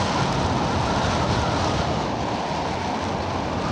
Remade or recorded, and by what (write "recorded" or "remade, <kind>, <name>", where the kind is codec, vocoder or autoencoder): recorded